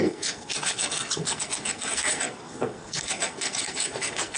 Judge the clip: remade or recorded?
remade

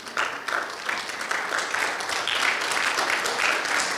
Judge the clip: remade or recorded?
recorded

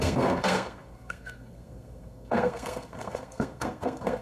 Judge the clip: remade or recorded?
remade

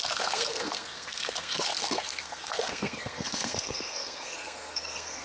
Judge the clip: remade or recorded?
remade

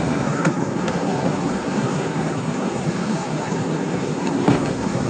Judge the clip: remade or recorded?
remade